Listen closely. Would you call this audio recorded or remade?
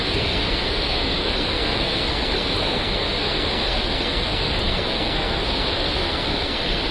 remade